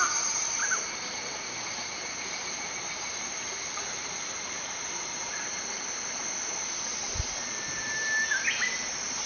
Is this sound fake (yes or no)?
no